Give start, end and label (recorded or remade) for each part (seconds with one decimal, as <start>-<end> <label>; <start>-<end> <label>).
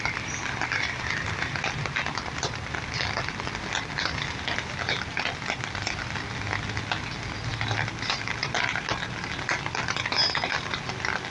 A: 0.0-11.3 recorded